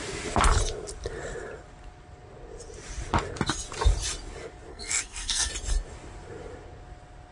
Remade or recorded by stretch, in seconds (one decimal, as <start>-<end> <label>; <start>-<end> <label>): 0.0-4.7 recorded; 4.7-5.5 remade; 5.5-7.3 recorded